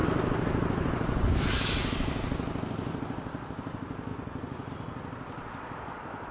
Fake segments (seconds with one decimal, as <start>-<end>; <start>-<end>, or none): 4.1-4.7